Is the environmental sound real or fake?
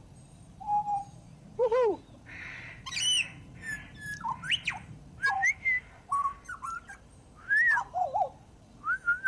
fake